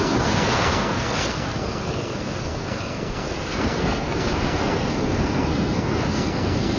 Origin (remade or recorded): remade